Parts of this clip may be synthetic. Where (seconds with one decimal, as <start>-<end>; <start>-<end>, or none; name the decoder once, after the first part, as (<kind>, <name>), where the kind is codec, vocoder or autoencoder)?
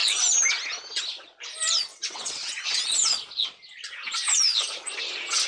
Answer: 1.9-2.5 (vocoder, WaveNeXt)